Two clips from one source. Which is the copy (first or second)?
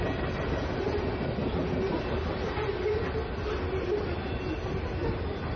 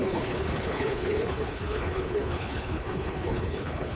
second